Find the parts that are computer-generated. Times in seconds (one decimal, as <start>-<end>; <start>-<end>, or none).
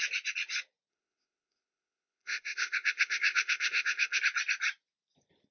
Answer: 0.9-4.2